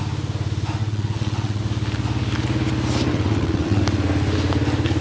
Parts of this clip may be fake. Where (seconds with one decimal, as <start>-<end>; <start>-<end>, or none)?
0.8-1.6; 3.1-3.8